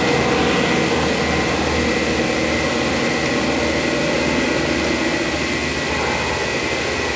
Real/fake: real